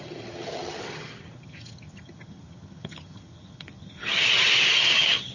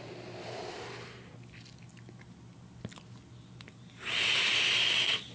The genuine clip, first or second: second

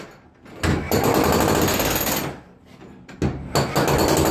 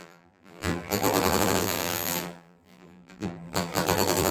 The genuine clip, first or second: first